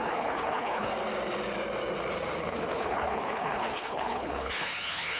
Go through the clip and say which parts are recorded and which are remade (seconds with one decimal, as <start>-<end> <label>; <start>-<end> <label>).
0.0-0.9 remade; 0.9-2.4 recorded; 2.4-5.2 remade